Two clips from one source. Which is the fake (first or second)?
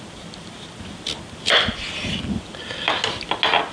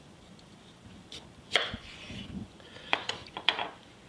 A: second